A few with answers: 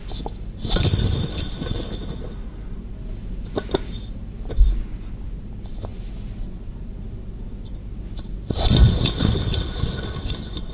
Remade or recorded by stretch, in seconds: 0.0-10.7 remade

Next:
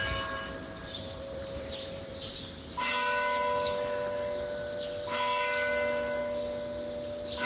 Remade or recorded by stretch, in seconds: 0.0-0.8 recorded; 0.8-2.3 remade; 2.3-7.5 recorded